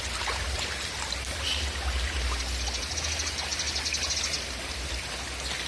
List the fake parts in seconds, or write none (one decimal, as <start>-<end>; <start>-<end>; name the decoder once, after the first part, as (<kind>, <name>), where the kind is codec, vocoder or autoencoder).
none